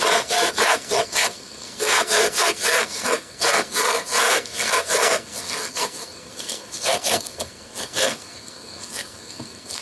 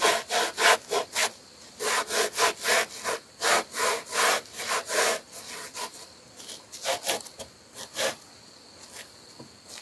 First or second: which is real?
second